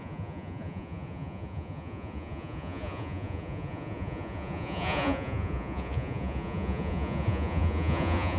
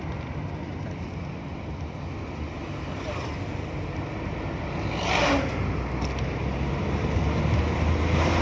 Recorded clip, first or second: second